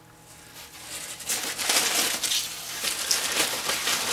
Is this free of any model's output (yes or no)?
yes